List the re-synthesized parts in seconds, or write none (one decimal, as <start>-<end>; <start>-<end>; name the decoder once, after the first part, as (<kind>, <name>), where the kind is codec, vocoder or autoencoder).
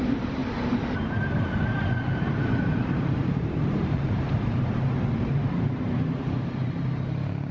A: 0.0-0.4 (vocoder, BigVGAN v2); 2.2-7.5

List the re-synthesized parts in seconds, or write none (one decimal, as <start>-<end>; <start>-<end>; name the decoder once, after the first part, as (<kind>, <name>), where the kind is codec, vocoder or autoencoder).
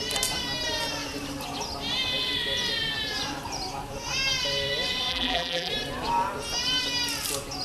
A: 5.1-5.7 (vocoder, BigVGAN v2)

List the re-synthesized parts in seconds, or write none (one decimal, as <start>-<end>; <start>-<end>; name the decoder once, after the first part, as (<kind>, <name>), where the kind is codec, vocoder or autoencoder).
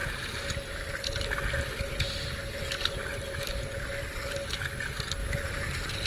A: 0.0-0.5 (vocoder, BigVGAN v2); 5.2-6.1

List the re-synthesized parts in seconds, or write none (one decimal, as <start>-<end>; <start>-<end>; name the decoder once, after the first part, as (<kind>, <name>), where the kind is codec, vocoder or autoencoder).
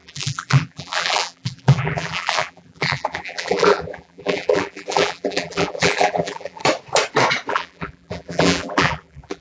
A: 0.0-6.6 (vocoder, BigVGAN v2); 7.5-9.4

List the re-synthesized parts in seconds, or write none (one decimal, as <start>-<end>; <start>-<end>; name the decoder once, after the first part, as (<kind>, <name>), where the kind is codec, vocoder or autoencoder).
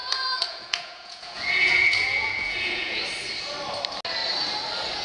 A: 0.0-3.0 (vocoder, Vocos)